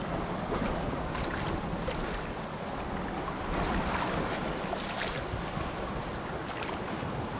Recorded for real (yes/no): yes